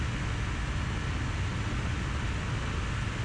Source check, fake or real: real